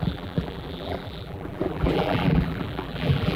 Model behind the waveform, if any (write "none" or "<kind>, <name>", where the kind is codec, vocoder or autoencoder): vocoder, BigVGAN v2